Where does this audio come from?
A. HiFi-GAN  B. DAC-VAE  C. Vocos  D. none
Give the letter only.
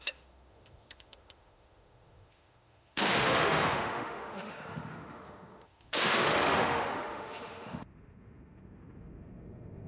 B